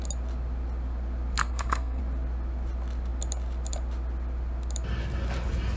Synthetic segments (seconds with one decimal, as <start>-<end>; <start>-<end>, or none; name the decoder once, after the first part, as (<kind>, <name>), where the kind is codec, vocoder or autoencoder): 1.4-2.0 (codec, SNAC)